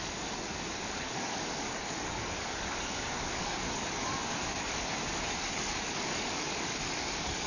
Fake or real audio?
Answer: fake